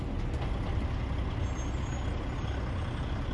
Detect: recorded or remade recorded